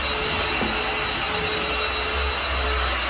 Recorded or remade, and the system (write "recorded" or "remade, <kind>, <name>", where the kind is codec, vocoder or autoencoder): recorded